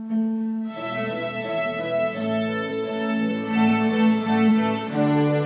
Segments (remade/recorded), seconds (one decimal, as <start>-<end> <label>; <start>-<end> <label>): 0.0-2.7 recorded; 2.7-3.3 remade; 3.3-5.5 recorded